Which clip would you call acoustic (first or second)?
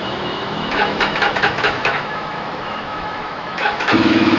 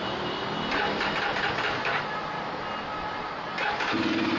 second